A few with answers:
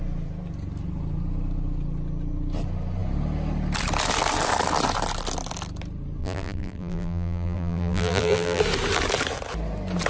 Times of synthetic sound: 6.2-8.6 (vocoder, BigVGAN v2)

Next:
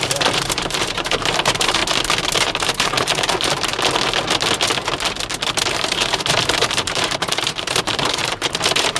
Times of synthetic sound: 0.0-1.8 (vocoder, BigVGAN v2); 2.4-3.7; 5.7-9.0

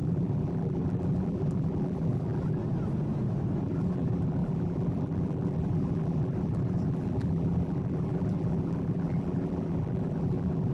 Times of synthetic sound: 0.0-2.6 (vocoder, BigVGAN v2); 3.6-10.7

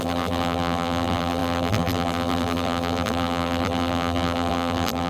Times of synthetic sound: 0.0-5.1 (vocoder, BigVGAN v2)